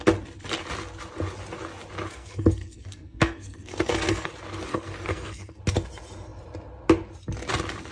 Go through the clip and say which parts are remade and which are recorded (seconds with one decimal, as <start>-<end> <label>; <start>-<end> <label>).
0.0-2.1 recorded; 2.1-4.3 remade; 4.3-4.7 recorded; 4.7-5.6 remade; 5.6-7.9 recorded